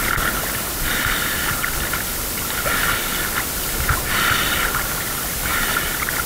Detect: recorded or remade recorded